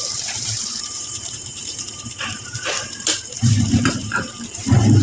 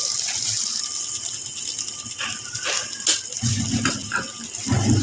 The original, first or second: second